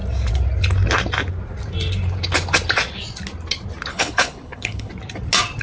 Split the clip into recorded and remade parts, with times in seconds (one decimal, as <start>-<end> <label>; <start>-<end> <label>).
0.0-3.9 recorded; 3.9-4.9 remade; 4.9-5.6 recorded